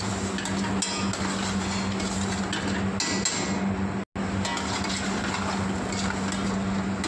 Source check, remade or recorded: recorded